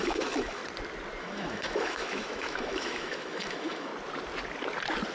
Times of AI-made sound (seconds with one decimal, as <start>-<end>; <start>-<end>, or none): 0.0-0.6; 1.2-3.9